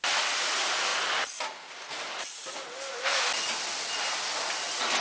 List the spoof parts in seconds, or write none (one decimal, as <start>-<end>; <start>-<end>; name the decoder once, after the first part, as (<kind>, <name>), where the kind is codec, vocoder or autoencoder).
none